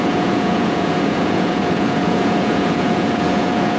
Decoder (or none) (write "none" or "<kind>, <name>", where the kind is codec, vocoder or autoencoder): vocoder, Vocos